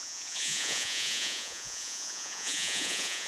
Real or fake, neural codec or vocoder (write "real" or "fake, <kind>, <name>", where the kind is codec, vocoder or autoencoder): fake, vocoder, Vocos